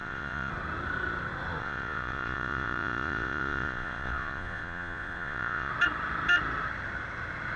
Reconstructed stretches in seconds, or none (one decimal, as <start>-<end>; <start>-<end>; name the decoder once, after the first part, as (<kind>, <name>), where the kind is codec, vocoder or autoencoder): 0.0-0.5 (vocoder, Vocos); 1.6-5.7